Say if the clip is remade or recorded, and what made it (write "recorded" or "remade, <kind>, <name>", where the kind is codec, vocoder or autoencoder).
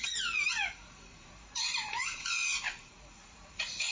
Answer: remade, vocoder, Vocos